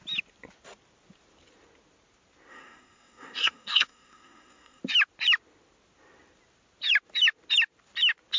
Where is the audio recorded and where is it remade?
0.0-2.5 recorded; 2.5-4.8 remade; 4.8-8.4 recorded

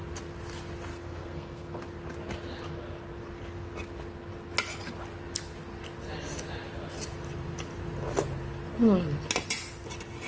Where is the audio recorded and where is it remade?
0.0-0.9 recorded; 0.9-1.8 remade; 1.8-10.3 recorded

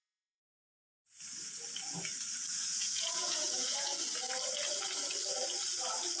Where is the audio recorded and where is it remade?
0.0-0.4 remade; 0.4-2.5 recorded; 2.5-3.9 remade; 3.9-6.2 recorded

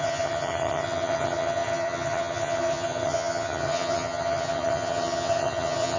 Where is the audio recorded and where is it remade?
0.0-6.0 remade

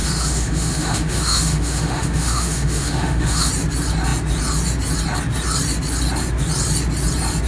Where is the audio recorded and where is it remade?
0.0-3.5 remade; 3.5-7.5 recorded